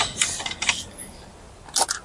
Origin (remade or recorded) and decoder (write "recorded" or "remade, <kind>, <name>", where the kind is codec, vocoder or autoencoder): recorded